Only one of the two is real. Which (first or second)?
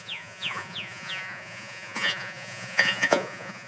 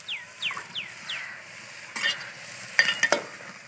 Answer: second